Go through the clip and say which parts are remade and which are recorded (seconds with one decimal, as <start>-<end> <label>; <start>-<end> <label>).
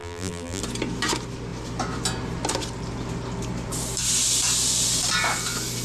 0.0-0.6 remade; 0.6-5.8 recorded